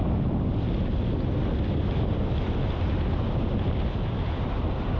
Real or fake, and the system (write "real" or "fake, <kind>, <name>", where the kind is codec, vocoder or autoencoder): real